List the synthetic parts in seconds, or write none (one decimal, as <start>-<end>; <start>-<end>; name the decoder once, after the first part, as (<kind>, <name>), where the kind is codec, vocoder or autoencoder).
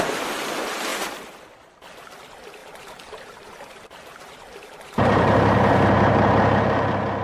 2.6-6.6 (vocoder, BigVGAN v2)